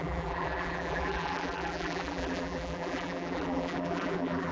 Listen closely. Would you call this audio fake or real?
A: fake